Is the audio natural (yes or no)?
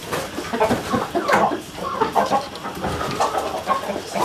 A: yes